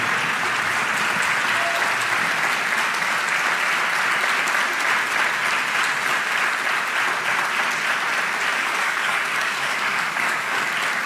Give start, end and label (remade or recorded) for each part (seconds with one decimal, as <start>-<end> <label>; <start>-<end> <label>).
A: 0.0-8.5 recorded; 8.5-10.7 remade; 10.7-11.1 recorded